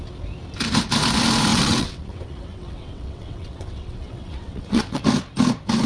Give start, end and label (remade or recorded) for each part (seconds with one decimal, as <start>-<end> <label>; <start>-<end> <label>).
0.0-1.5 recorded; 1.5-5.0 remade; 5.0-5.9 recorded